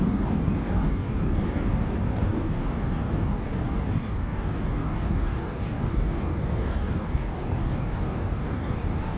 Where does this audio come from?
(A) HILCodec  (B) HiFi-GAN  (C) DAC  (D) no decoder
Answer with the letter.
C